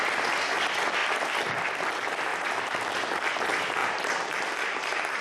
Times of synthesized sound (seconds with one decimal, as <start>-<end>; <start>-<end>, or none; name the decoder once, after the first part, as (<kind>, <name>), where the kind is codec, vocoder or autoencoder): 2.3-2.9 (vocoder, BigVGAN v2); 3.8-5.2